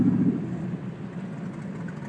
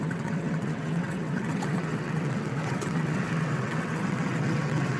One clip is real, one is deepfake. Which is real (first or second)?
first